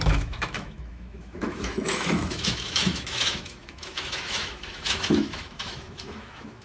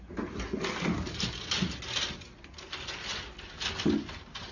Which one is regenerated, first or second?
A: first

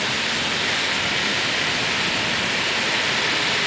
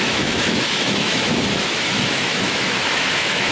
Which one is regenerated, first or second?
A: second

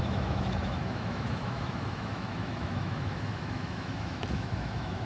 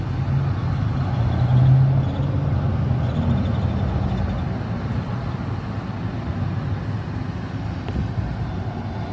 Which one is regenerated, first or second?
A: first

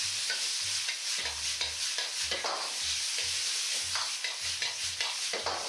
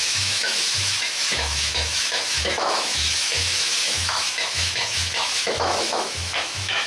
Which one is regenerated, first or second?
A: second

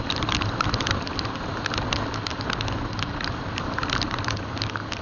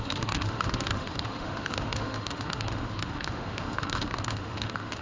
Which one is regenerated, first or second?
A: second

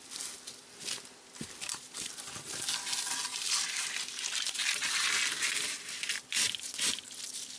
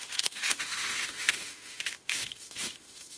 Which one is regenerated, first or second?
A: second